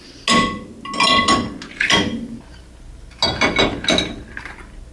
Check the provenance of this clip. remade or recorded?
recorded